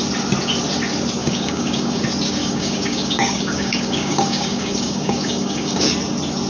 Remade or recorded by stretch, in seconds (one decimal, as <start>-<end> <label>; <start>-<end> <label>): 0.0-1.2 recorded; 1.2-2.0 remade; 2.0-2.4 recorded; 2.4-5.8 remade; 5.8-6.5 recorded